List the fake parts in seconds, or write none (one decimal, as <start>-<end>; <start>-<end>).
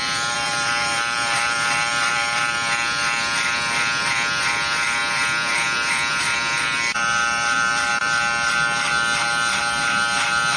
0.0-7.9